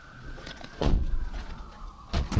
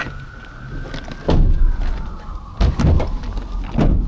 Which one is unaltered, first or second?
second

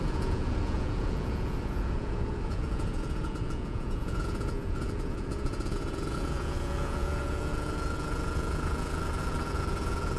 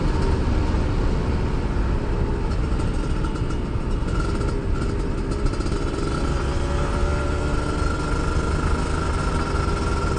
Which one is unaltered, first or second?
second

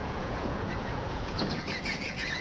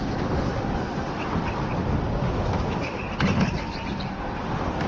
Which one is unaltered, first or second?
second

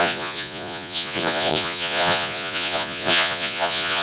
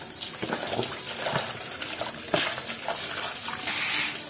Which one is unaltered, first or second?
second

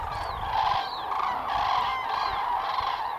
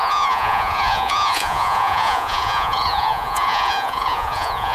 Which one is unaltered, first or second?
first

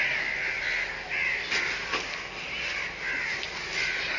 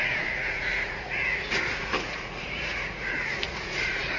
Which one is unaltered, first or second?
first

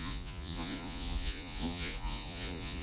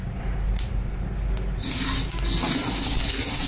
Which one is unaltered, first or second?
second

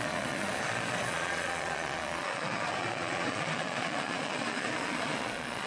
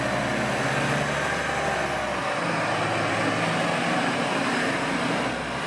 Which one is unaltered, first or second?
second